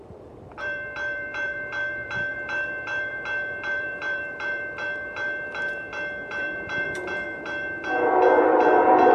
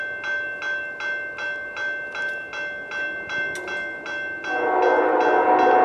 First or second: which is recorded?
second